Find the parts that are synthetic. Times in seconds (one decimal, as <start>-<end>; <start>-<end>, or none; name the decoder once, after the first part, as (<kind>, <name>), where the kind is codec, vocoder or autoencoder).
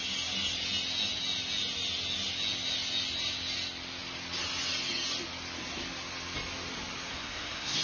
7.1-7.8 (codec, SNAC)